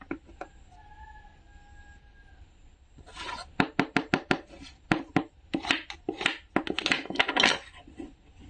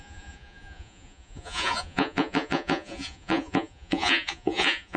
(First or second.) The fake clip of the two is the second